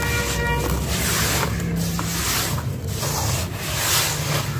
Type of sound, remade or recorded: recorded